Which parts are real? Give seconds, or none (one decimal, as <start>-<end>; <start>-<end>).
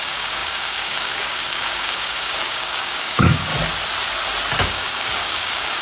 3.5-4.6